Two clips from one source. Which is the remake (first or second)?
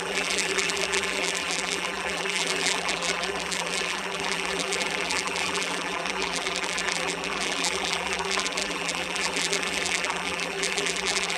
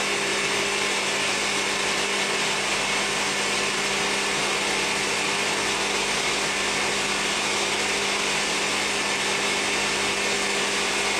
first